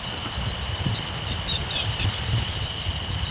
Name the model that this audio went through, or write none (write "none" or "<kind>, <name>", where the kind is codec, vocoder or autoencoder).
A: none